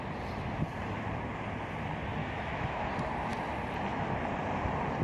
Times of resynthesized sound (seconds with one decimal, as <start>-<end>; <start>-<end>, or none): 2.2-2.8